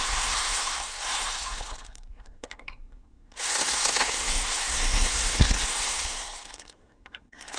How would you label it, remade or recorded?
remade